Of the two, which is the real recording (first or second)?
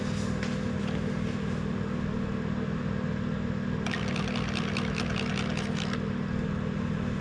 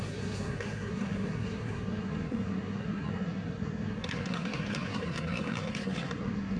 first